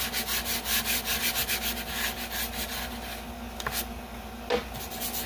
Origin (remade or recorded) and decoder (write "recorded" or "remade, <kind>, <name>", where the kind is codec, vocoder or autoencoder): recorded